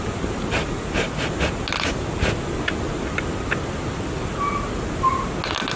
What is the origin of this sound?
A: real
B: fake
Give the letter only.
A